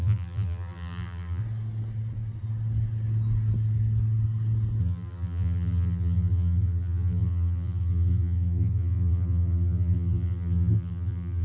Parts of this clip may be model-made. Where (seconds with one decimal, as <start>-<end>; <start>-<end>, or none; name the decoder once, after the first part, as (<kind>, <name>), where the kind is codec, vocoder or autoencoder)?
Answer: 0.0-1.4 (vocoder, BigVGAN v2); 4.8-11.4